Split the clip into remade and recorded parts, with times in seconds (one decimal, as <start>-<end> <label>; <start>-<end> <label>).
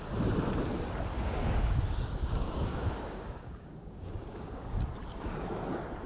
0.0-1.1 recorded; 1.1-4.8 remade; 4.8-6.1 recorded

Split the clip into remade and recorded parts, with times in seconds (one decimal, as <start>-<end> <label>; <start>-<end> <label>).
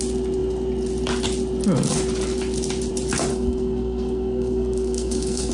0.0-3.3 recorded; 3.3-5.5 remade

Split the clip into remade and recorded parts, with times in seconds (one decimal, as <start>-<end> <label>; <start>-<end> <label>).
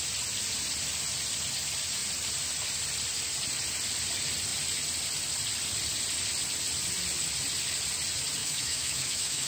0.0-8.4 recorded; 8.4-9.5 remade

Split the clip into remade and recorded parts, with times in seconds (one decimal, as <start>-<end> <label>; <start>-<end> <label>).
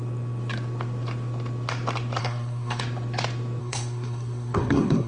0.0-2.2 recorded; 2.2-2.8 remade; 2.8-3.6 recorded; 3.6-5.1 remade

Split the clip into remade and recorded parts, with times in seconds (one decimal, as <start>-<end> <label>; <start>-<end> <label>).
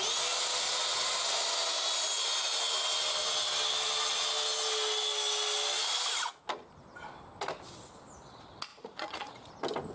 0.0-8.7 recorded; 8.7-9.5 remade; 9.5-9.9 recorded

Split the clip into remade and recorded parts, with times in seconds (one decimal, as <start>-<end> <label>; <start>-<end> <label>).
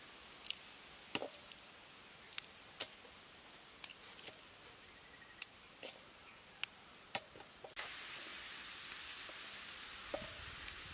0.0-6.3 recorded; 6.3-7.2 remade; 7.2-10.9 recorded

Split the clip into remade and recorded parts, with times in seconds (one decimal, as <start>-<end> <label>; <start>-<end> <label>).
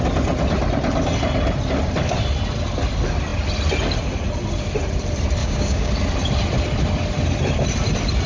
0.0-5.4 recorded; 5.4-5.9 remade; 5.9-8.3 recorded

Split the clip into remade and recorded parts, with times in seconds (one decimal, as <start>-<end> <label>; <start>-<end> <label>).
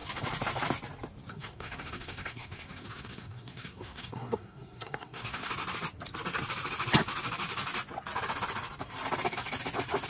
0.0-1.3 recorded; 1.3-5.5 remade; 5.5-10.1 recorded